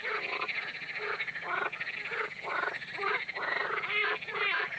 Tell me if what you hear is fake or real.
real